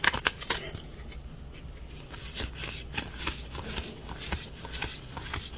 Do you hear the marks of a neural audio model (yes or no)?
no